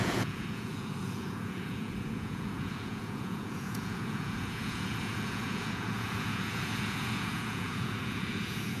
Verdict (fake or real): fake